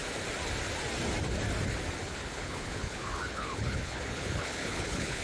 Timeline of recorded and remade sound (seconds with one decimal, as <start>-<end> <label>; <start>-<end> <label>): 0.0-2.0 recorded; 2.0-5.2 remade